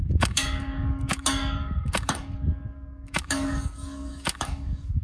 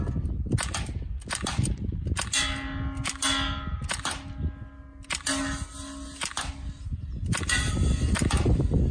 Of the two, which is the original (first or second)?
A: second